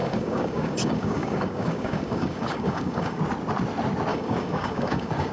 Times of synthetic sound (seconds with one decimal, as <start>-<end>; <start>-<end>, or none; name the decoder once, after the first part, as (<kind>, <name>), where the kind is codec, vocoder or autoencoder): 0.0-3.2 (codec, DAC); 4.1-5.3